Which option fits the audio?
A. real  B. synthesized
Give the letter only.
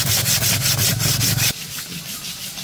A